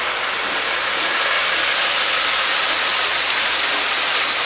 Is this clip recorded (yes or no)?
yes